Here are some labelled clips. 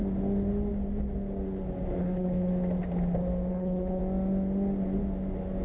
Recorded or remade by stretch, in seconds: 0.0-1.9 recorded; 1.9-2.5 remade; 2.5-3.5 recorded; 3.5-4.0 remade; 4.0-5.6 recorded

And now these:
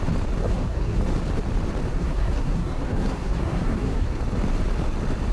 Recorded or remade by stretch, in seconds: 0.0-0.4 recorded; 0.4-1.0 remade; 1.0-1.9 recorded; 1.9-4.2 remade; 4.2-5.3 recorded

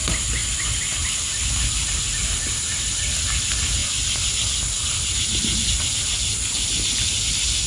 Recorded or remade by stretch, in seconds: 0.0-7.7 recorded

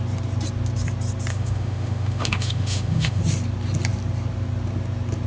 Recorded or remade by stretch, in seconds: 0.0-1.3 recorded; 1.3-3.2 remade; 3.2-5.3 recorded

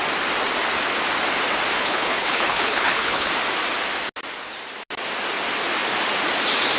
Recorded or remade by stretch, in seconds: 0.0-1.8 recorded; 1.8-3.3 remade; 3.3-6.8 recorded

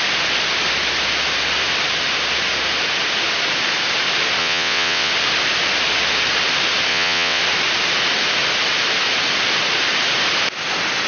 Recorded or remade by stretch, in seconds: 0.0-4.4 recorded; 4.4-5.1 remade; 5.1-6.9 recorded; 6.9-7.4 remade; 7.4-11.1 recorded

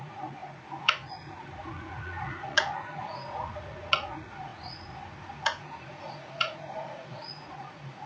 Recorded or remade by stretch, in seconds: 0.0-8.1 remade